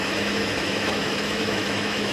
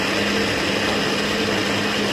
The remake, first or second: first